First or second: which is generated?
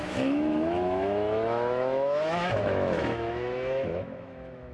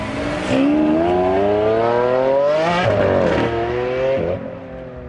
first